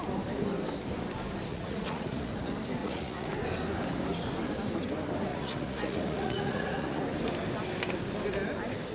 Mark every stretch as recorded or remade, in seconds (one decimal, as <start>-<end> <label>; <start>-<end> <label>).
0.0-1.5 recorded; 1.5-2.3 remade; 2.3-2.8 recorded; 2.8-3.3 remade; 3.3-5.3 recorded; 5.3-7.0 remade; 7.0-8.9 recorded